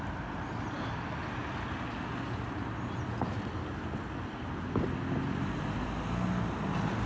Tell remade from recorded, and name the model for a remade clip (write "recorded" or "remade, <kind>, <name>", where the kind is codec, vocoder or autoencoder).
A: recorded